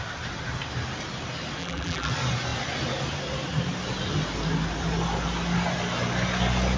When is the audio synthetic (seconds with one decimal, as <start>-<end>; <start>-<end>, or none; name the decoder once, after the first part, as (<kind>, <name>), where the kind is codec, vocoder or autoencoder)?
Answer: 1.6-2.1 (vocoder, BigVGAN v2)